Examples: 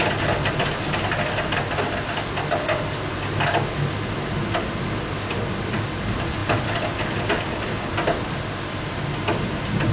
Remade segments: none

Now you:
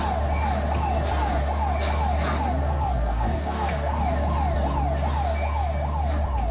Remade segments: 2.6-4.0 (codec, SNAC)

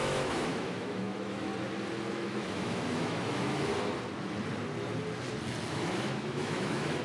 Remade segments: 0.0-1.5 (autoencoder, DAC-VAE); 2.1-3.7; 5.7-7.0

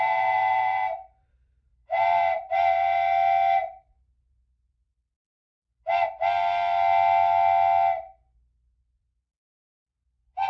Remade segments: 0.0-5.2 (vocoder, BigVGAN v2); 8.8-10.5

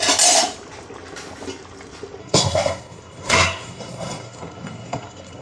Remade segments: 2.2-5.4 (codec, SNAC)

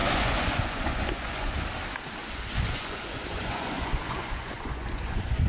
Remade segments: 0.0-1.5 (vocoder, Vocos); 2.2-5.5